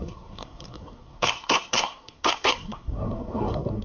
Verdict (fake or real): fake